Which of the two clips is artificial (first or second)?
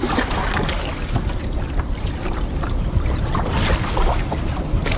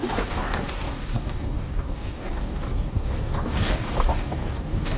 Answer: second